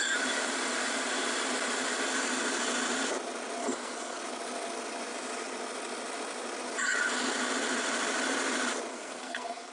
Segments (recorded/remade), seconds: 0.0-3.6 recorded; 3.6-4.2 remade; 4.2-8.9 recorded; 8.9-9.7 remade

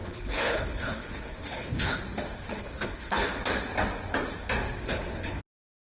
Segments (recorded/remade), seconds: 0.0-2.0 remade; 2.0-2.5 recorded; 2.5-3.4 remade; 3.4-4.8 recorded; 4.8-5.4 remade; 5.4-5.9 recorded

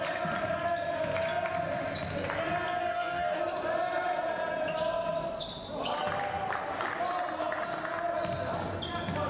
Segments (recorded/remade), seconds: 0.0-2.8 recorded; 2.8-3.4 remade; 3.4-9.3 recorded

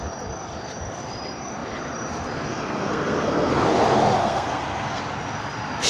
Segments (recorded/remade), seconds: 0.0-2.5 recorded; 2.5-3.5 remade; 3.5-4.2 recorded; 4.2-5.0 remade; 5.0-5.9 recorded

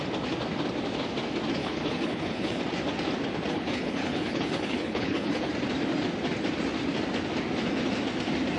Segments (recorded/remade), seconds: 0.0-1.6 recorded; 1.6-2.6 remade; 2.6-3.5 recorded; 3.5-5.5 remade; 5.5-8.6 recorded

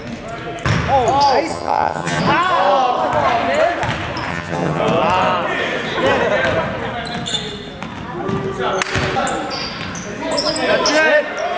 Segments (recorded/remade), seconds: 0.0-1.5 recorded; 1.5-2.2 remade; 2.2-4.3 recorded; 4.3-4.8 remade; 4.8-11.6 recorded

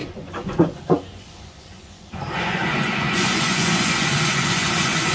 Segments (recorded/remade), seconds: 0.0-5.1 remade